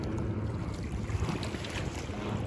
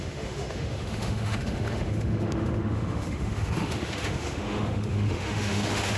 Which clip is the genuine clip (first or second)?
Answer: first